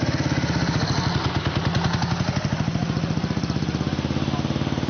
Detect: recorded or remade recorded